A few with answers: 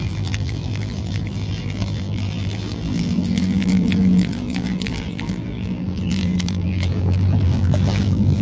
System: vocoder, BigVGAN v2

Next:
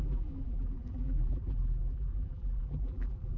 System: vocoder, BigVGAN v2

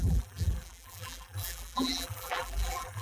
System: vocoder, BigVGAN v2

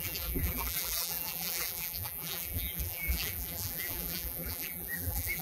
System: vocoder, BigVGAN v2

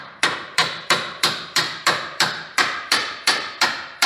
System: vocoder, BigVGAN v2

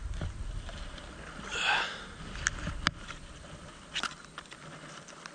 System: none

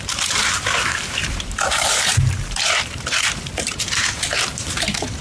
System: vocoder, BigVGAN v2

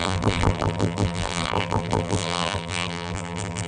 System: vocoder, BigVGAN v2